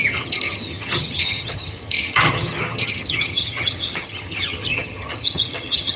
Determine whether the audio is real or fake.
fake